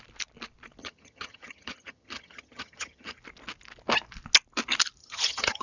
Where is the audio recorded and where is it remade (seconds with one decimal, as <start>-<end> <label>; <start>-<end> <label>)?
0.0-0.8 recorded; 0.8-3.2 remade; 3.2-5.0 recorded; 5.0-5.6 remade